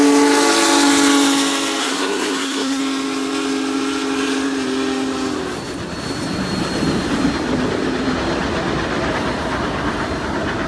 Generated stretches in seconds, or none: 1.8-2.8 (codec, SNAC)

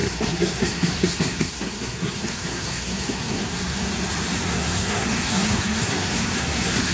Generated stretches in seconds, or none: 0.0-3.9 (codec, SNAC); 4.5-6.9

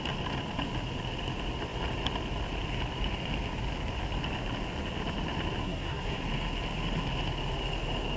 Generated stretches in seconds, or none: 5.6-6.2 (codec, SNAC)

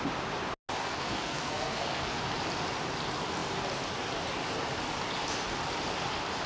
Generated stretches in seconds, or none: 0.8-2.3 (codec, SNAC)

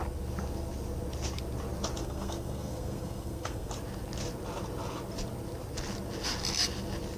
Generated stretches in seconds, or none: 2.0-3.7 (codec, SNAC)